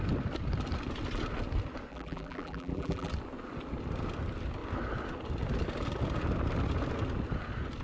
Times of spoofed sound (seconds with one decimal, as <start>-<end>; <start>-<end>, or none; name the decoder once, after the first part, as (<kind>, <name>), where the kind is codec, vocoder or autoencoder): 1.9-3.1 (vocoder, BigVGAN v2)